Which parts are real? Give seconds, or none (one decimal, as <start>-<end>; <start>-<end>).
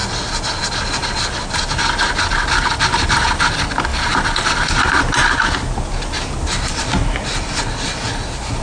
0.0-8.6